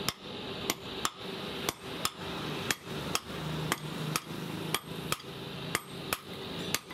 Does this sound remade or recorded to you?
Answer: recorded